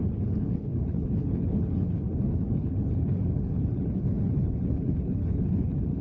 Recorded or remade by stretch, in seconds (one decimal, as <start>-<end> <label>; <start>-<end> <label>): 0.0-6.0 remade